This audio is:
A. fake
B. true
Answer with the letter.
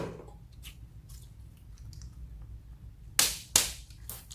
B